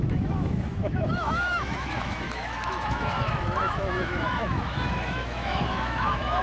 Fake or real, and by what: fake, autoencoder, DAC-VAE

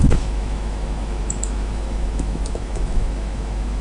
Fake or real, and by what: fake, autoencoder, DAC-VAE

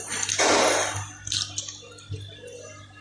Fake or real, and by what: real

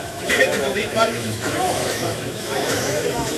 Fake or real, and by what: fake, autoencoder, DAC-VAE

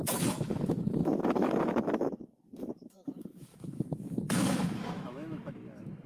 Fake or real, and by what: fake, autoencoder, DAC-VAE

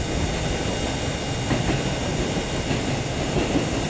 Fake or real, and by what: real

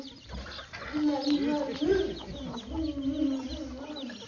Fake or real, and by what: real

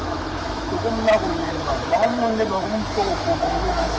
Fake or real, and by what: fake, autoencoder, DAC-VAE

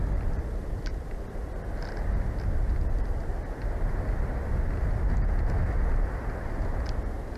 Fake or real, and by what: real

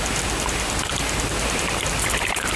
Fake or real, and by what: real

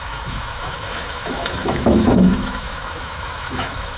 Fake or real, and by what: fake, autoencoder, DAC-VAE